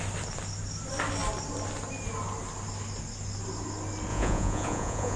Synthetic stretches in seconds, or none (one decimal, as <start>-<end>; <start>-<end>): 4.1-5.2